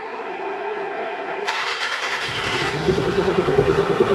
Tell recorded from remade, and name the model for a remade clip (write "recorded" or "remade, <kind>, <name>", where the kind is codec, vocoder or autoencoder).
remade, codec, SNAC